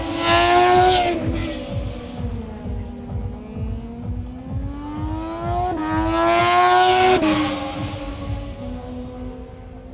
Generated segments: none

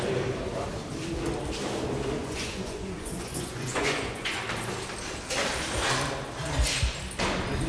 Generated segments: 2.2-4.4

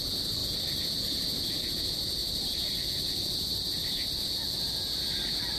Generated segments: none

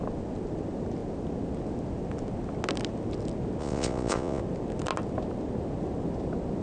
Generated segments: 3.6-4.4

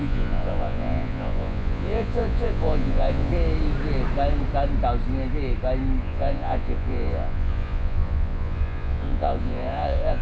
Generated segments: 0.0-3.3; 6.0-10.2

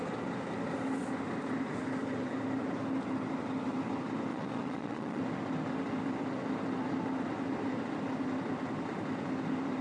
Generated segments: 4.3-5.2

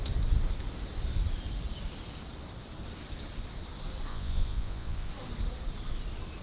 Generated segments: 4.1-5.1

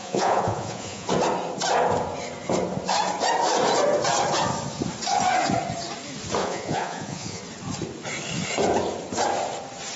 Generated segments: 0.0-1.1; 6.4-7.4